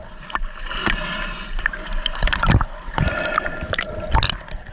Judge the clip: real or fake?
real